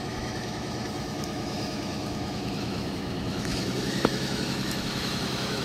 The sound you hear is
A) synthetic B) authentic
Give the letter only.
A